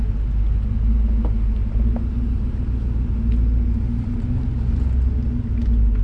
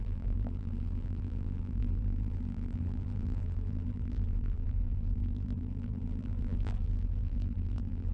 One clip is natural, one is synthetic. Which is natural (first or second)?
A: first